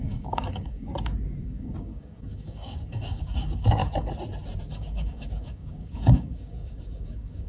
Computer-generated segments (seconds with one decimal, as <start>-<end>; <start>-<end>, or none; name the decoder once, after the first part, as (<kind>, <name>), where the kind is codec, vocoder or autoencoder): 0.0-0.9 (codec, DAC); 1.4-3.8; 4.7-7.5

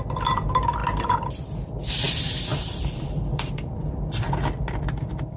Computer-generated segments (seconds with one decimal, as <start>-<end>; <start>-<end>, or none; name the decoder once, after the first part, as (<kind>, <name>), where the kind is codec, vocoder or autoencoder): none

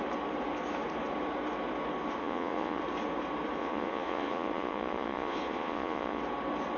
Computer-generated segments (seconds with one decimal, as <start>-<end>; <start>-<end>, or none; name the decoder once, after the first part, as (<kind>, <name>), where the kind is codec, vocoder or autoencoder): 2.2-2.8 (vocoder, Vocos); 3.6-6.2

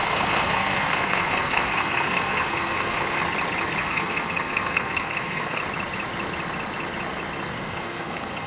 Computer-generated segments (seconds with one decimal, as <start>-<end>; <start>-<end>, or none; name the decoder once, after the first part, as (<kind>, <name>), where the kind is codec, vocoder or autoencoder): 0.0-3.2 (codec, SNAC); 3.8-5.6; 7.5-8.5

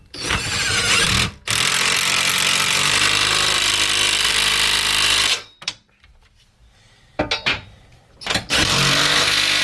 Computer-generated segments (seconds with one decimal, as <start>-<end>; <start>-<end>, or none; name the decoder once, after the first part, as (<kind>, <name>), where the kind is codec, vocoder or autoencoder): 0.0-9.6 (vocoder, BigVGAN v2)

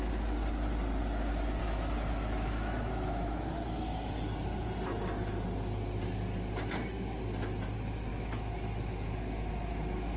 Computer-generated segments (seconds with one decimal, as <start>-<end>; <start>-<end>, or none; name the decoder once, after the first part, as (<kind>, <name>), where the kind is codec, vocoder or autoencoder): 1.6-4.1 (autoencoder, DAC-VAE); 8.1-10.2

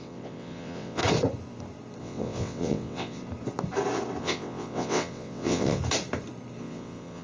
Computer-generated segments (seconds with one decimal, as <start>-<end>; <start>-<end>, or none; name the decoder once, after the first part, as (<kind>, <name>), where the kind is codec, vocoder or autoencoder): 0.0-1.0 (vocoder, WaveNeXt); 2.0-3.2; 4.2-5.8; 6.6-7.2

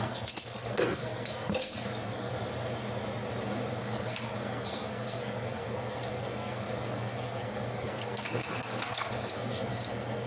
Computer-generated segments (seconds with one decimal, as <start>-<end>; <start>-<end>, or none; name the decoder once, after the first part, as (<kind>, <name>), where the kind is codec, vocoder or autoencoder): 0.0-2.3 (codec, SNAC); 3.8-10.3